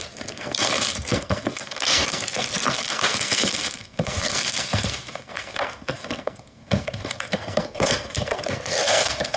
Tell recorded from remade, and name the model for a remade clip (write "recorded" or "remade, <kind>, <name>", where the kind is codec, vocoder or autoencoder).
remade, codec, SNAC